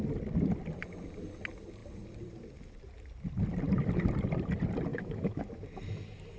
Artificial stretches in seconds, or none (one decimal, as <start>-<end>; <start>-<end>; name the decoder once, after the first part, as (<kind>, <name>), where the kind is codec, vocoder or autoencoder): 4.9-5.6 (autoencoder, DAC-VAE)